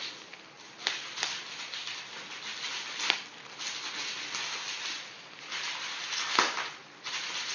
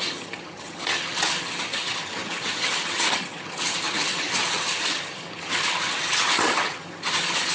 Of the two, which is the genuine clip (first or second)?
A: first